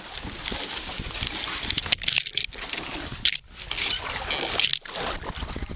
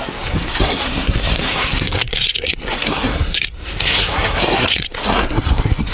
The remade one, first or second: second